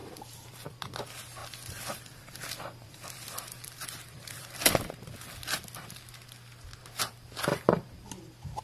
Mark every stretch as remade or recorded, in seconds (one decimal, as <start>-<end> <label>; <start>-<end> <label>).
0.0-0.8 remade; 0.8-1.4 recorded; 1.4-4.9 remade; 4.9-8.6 recorded